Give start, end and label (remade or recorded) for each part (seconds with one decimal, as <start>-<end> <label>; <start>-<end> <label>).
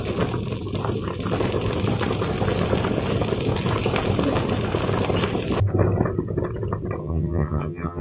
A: 0.0-7.0 recorded; 7.0-8.0 remade